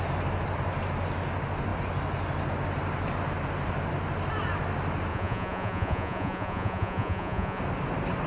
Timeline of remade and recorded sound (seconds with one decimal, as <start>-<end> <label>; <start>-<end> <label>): 0.0-5.1 recorded; 5.1-7.6 remade; 7.6-8.3 recorded